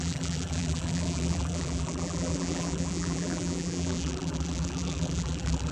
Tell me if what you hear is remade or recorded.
remade